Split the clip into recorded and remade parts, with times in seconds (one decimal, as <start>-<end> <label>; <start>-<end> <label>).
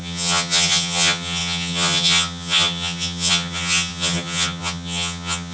0.0-5.5 remade